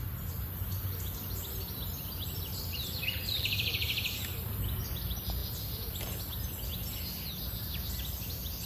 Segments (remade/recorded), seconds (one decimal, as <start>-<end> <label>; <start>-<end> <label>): 0.0-2.5 recorded; 2.5-4.2 remade; 4.2-8.7 recorded